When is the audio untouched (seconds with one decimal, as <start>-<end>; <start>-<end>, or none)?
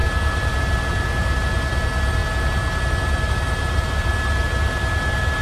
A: 0.0-5.4